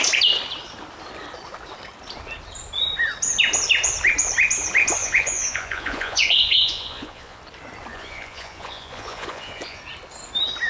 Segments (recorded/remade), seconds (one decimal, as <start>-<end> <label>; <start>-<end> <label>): 0.0-5.0 recorded; 5.0-7.4 remade; 7.4-7.9 recorded; 7.9-9.8 remade; 9.8-10.7 recorded